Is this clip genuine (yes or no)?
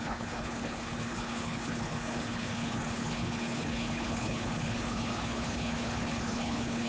no